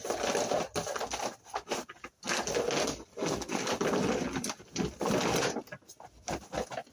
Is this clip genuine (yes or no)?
yes